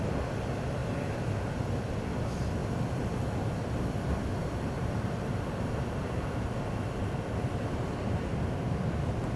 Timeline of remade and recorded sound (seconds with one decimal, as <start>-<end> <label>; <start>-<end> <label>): 0.0-0.8 recorded; 0.8-1.3 remade; 1.3-2.6 recorded; 2.6-3.2 remade; 3.2-4.3 recorded; 4.3-8.9 remade; 8.9-9.4 recorded